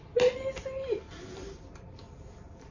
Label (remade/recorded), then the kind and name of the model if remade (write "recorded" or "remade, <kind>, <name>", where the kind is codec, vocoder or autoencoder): recorded